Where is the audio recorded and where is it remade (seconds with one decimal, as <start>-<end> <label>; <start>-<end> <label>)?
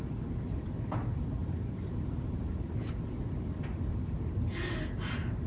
0.0-1.4 recorded; 1.4-2.7 remade; 2.7-5.5 recorded